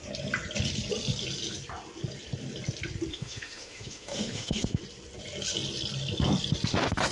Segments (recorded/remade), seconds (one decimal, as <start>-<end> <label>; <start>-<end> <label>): 0.0-3.1 recorded; 3.1-4.8 remade; 4.8-7.1 recorded